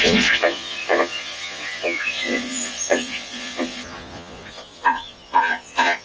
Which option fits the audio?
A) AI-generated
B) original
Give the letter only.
A